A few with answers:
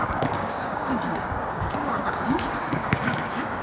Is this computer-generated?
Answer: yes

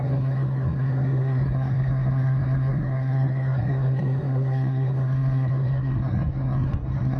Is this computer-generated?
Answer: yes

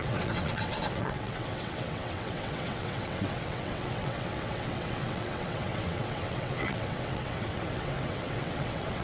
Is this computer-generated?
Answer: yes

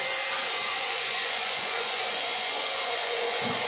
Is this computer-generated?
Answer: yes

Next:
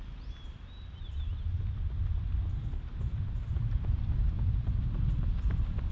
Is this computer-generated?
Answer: no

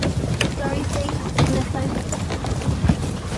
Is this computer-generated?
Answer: yes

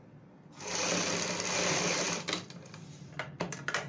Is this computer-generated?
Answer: no